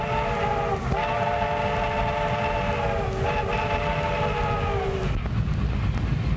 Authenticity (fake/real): real